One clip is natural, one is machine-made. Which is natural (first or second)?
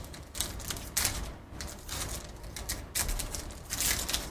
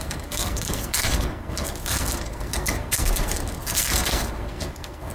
first